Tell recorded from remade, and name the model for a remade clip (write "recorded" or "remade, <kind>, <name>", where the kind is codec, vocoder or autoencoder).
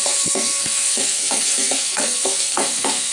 remade, codec, SNAC